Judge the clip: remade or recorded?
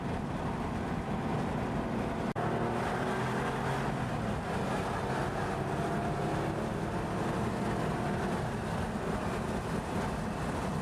recorded